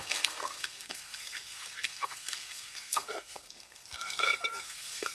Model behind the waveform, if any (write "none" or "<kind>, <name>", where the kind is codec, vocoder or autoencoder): codec, SNAC